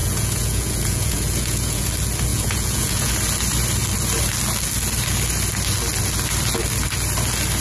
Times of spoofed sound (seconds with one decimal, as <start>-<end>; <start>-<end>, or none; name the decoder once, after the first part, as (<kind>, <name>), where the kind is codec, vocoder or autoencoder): 0.0-1.9 (vocoder, Vocos); 2.3-3.1